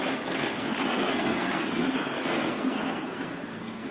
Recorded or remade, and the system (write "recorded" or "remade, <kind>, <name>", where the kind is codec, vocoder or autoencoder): remade, codec, SNAC